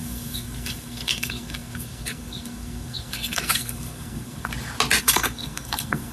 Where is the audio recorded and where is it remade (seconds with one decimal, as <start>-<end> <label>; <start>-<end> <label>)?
0.0-4.5 remade; 4.5-5.0 recorded; 5.0-6.1 remade